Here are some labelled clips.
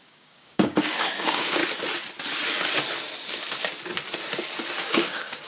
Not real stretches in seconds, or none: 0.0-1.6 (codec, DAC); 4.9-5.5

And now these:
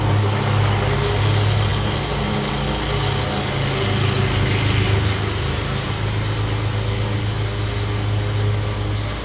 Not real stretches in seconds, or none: none

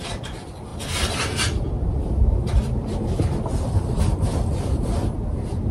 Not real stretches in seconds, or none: none